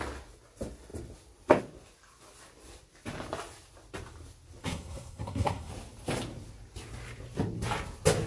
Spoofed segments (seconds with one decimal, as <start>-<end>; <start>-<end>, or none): 4.6-5.7